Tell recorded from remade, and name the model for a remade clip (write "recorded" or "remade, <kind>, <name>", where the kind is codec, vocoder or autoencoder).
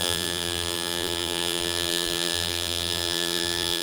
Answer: remade, vocoder, BigVGAN v2